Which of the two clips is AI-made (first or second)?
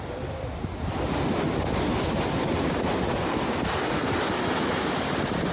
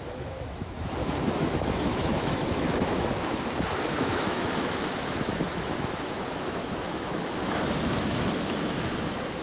second